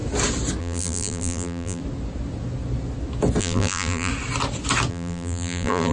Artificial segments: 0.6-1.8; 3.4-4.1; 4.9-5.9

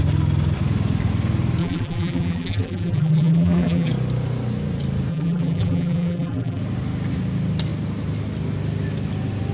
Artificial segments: 1.6-3.9; 5.1-6.6

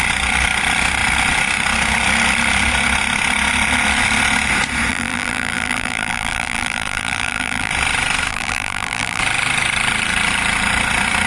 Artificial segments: 4.9-7.7; 8.3-9.2